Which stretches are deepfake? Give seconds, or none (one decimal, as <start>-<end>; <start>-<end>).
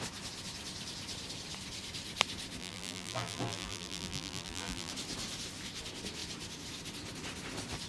2.6-4.9